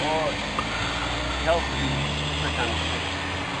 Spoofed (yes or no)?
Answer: no